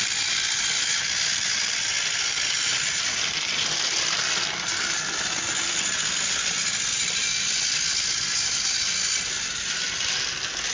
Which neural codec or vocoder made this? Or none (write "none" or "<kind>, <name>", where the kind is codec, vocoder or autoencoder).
none